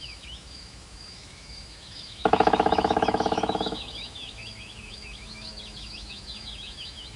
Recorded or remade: remade